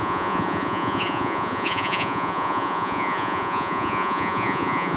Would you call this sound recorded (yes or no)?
no